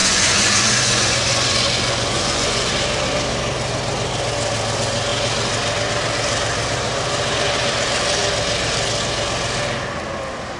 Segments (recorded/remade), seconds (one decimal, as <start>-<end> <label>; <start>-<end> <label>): 0.0-2.7 remade; 2.7-10.6 recorded